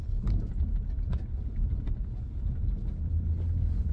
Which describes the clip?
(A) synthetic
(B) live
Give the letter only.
B